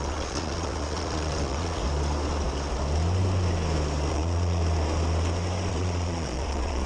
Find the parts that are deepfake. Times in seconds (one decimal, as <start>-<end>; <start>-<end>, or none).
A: 0.0-1.8; 4.1-4.6; 5.7-6.9